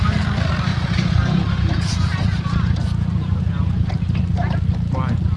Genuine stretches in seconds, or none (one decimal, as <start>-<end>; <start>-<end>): 0.0-0.7; 3.9-5.4

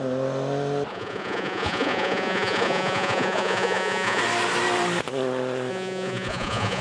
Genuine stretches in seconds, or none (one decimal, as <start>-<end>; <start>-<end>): 0.0-0.9; 4.2-5.7

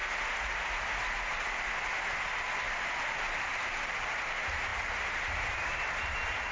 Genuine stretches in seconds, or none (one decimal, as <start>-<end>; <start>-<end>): 0.0-6.5

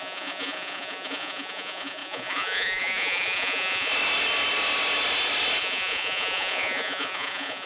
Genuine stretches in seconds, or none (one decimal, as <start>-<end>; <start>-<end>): 3.9-5.6

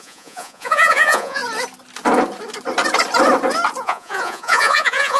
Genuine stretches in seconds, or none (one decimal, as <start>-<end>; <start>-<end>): 1.4-3.8

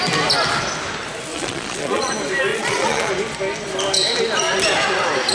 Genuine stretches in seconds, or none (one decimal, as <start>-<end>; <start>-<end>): 0.0-1.3; 2.1-2.5; 3.1-5.3